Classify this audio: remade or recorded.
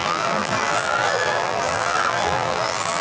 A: remade